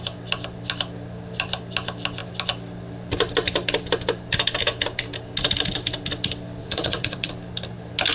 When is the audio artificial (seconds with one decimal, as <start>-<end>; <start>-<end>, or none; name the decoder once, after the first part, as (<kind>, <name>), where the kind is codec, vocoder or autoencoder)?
6.6-7.3 (vocoder, WaveNeXt)